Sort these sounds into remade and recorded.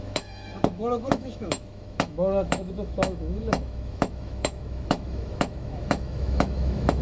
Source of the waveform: remade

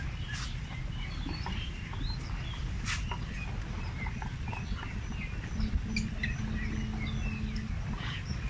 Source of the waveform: recorded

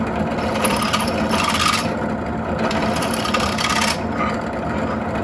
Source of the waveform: recorded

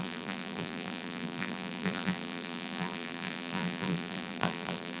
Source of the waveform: remade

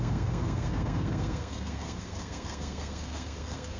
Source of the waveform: remade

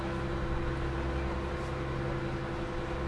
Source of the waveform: recorded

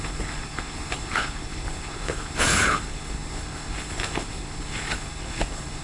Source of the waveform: remade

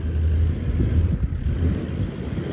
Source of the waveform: recorded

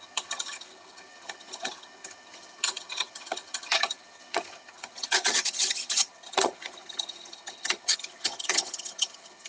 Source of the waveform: remade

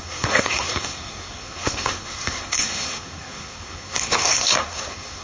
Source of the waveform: remade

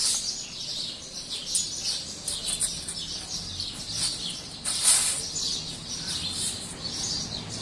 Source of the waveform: recorded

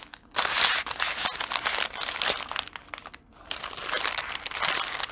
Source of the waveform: recorded